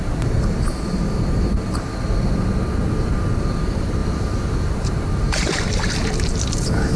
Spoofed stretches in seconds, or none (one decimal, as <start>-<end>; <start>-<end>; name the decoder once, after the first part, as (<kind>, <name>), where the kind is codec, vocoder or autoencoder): 0.0-1.9 (vocoder, BigVGAN v2); 3.0-4.0; 4.7-7.0